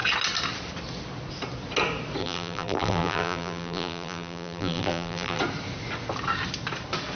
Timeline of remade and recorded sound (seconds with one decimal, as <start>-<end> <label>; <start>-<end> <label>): 0.0-2.2 recorded; 2.2-5.4 remade; 5.4-7.2 recorded